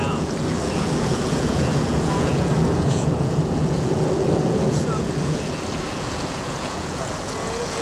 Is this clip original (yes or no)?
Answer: no